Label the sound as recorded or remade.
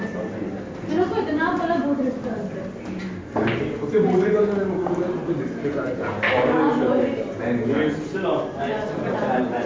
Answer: recorded